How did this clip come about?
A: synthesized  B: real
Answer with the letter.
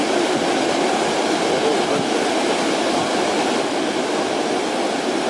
B